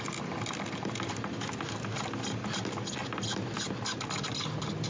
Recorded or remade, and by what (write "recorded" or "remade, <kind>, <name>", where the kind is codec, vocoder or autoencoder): recorded